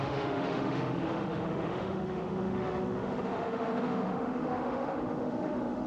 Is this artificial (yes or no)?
yes